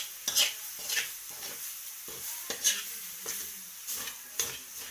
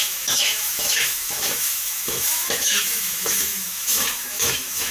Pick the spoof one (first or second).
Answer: second